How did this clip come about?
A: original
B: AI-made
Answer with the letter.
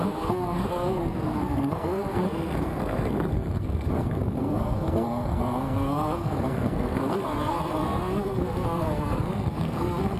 B